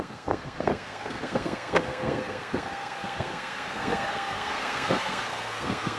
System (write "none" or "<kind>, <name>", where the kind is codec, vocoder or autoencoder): codec, SNAC